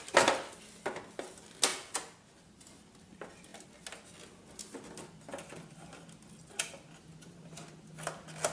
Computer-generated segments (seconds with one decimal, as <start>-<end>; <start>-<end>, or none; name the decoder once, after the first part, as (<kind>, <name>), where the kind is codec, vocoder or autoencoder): none